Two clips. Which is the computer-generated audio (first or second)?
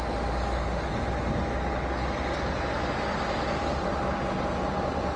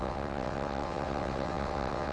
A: second